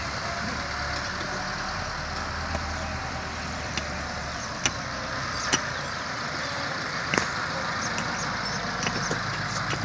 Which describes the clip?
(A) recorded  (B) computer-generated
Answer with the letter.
A